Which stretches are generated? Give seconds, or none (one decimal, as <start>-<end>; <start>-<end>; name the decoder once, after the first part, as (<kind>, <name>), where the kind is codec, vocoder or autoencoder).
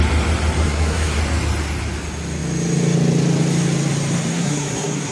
0.6-1.2 (codec, SNAC); 4.3-5.1